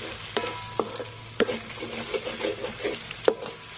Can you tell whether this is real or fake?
real